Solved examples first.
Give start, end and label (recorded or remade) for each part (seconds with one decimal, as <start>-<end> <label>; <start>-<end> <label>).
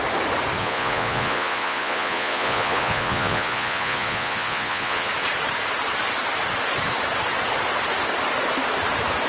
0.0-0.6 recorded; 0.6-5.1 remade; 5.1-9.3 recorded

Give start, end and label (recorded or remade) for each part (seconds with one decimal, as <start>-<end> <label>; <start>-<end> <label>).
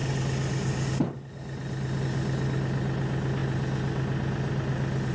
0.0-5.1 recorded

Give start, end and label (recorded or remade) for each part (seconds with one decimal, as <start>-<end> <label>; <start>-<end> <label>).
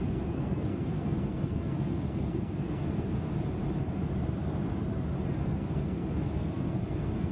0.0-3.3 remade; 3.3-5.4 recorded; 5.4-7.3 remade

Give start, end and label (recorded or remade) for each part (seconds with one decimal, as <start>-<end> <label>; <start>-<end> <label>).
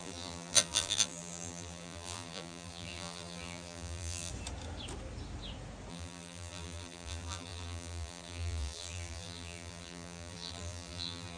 0.0-4.3 remade; 4.3-5.9 recorded; 5.9-11.4 remade